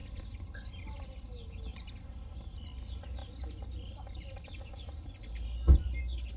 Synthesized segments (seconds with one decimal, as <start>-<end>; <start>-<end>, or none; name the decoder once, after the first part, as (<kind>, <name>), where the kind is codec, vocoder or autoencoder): none